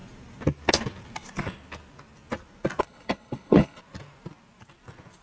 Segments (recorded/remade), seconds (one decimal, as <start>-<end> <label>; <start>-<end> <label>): 0.0-2.8 recorded; 2.8-3.8 remade; 3.8-5.2 recorded